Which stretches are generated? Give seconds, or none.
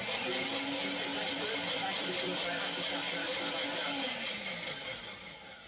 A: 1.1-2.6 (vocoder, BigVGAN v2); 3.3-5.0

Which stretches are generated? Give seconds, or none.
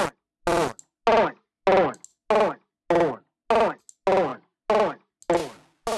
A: none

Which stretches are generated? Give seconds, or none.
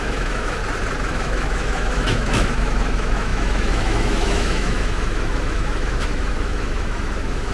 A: 0.0-0.6 (autoencoder, DAC-VAE); 1.1-7.5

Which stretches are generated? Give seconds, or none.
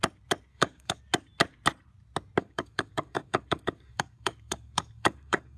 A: 0.5-1.0 (codec, DAC); 2.4-5.6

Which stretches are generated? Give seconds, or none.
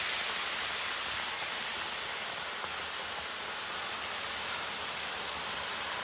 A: none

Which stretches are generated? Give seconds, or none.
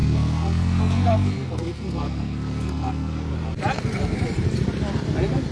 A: 0.0-3.3 (codec, SNAC)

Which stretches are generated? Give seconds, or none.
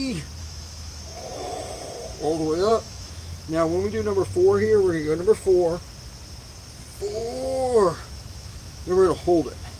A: 0.4-1.0 (autoencoder, DAC-VAE); 2.7-3.9; 7.2-9.8